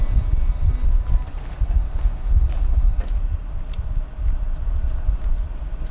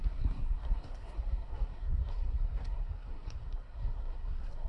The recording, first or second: first